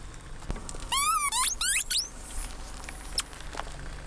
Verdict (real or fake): real